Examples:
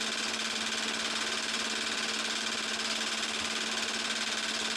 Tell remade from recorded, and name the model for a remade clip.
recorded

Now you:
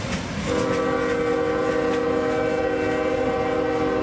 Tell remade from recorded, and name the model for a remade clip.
recorded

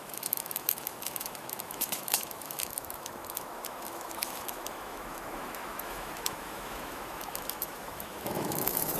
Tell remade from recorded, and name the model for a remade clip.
remade, autoencoder, DAC-VAE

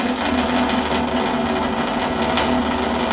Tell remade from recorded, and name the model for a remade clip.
recorded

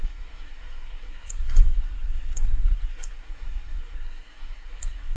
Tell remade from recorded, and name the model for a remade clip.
remade, codec, SNAC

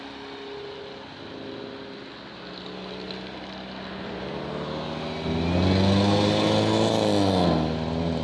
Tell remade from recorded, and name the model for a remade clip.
recorded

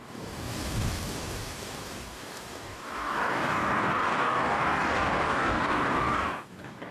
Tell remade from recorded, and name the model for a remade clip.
remade, codec, DAC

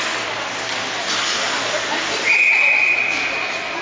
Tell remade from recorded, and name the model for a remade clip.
recorded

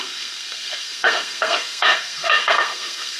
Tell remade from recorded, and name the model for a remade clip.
remade, codec, SNAC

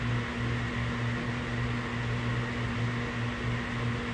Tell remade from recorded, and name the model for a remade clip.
recorded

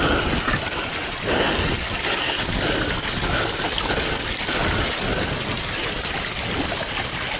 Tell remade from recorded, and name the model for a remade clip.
recorded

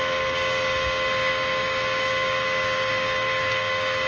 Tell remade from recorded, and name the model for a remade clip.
remade, codec, DAC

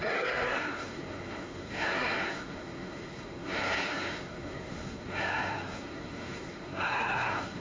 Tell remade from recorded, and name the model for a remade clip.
remade, codec, SNAC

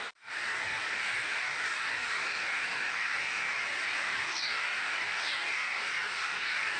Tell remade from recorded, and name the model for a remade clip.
remade, codec, DAC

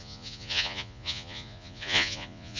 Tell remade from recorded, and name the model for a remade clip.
remade, vocoder, Vocos